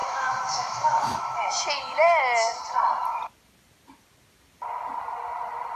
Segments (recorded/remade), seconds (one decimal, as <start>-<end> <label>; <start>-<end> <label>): 0.0-2.2 remade; 2.2-5.8 recorded